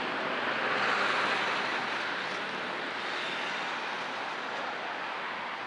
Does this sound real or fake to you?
real